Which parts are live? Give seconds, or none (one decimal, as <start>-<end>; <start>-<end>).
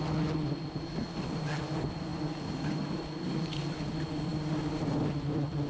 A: 0.0-5.7